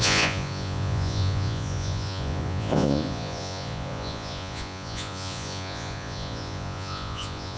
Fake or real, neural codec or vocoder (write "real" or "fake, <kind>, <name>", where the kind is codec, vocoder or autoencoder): fake, vocoder, Vocos